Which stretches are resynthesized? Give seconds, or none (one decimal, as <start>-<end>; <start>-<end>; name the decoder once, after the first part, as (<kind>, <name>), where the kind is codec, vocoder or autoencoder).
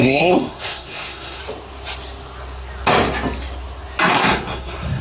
0.0-1.4 (codec, SNAC); 4.1-5.0